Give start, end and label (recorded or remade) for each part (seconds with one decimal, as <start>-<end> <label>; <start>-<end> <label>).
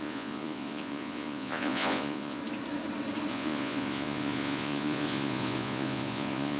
0.0-2.4 remade; 2.4-3.3 recorded; 3.3-6.6 remade